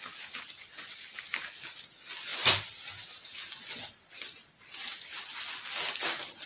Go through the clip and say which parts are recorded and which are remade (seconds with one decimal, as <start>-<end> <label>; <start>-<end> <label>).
0.0-6.5 recorded